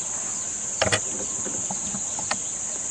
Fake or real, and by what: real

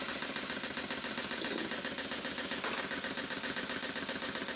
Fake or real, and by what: real